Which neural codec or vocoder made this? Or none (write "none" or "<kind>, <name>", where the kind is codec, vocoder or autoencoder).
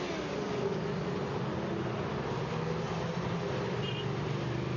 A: none